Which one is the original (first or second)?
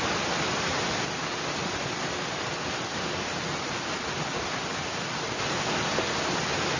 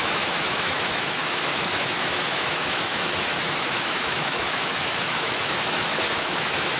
first